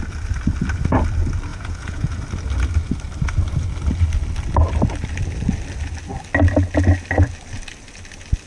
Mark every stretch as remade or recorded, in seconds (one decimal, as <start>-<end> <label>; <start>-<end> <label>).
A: 0.0-1.5 recorded; 1.5-2.2 remade; 2.2-8.5 recorded